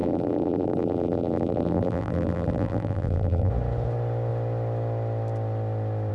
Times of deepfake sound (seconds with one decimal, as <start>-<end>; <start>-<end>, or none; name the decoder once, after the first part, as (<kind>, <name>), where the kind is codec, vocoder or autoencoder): 0.0-3.5 (vocoder, BigVGAN v2)